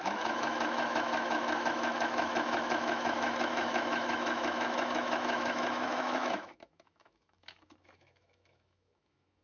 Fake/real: fake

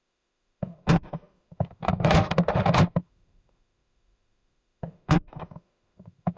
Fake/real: fake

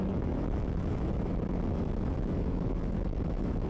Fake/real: fake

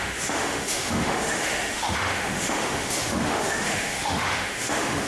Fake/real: fake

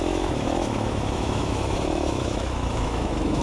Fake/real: fake